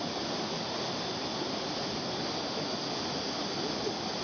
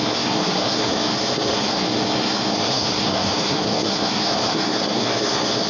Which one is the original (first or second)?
first